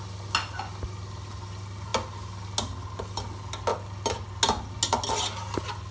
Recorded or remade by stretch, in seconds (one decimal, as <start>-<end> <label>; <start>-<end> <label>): 0.0-5.9 recorded